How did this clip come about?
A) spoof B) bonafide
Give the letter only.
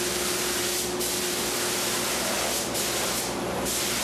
B